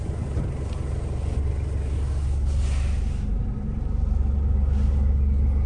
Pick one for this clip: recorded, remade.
recorded